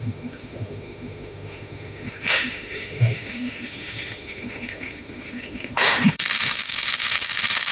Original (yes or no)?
no